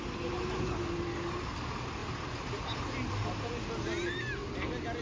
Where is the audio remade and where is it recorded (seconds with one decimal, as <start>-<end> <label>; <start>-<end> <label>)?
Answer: 0.0-5.0 recorded